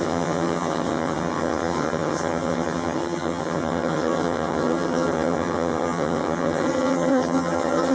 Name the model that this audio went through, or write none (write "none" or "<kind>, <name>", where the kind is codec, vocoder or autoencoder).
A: vocoder, HiFi-GAN